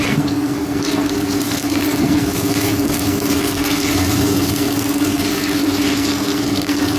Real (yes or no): no